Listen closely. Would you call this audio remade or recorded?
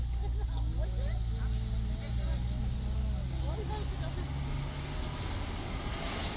recorded